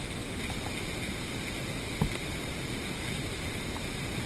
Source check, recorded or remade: recorded